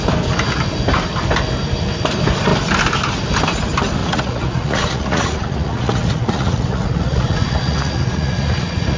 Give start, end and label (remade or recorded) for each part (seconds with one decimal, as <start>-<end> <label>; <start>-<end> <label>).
0.0-4.0 recorded; 4.0-9.0 remade